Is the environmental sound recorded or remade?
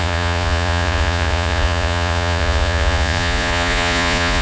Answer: remade